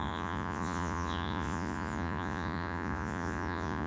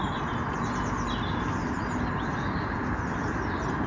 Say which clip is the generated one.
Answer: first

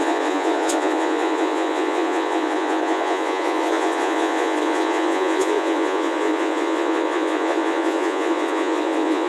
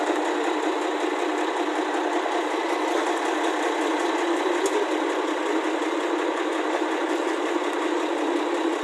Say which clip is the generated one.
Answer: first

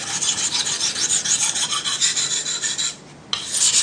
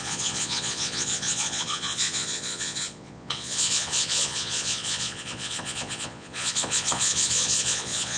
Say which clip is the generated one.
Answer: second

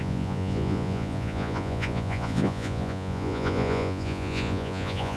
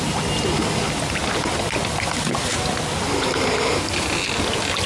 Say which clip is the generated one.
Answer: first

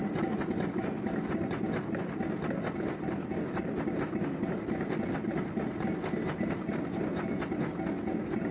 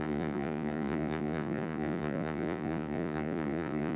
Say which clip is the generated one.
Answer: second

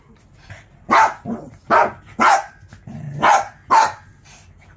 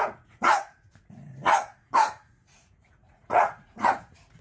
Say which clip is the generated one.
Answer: second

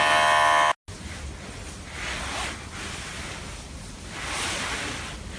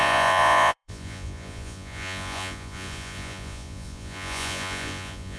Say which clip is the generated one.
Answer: second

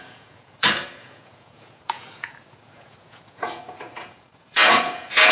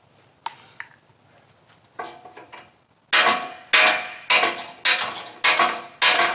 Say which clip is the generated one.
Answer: first